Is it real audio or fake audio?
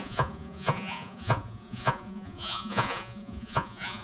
fake